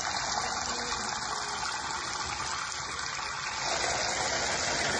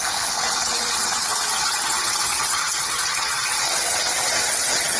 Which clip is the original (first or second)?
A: first